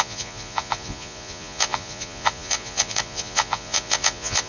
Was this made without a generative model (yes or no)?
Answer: no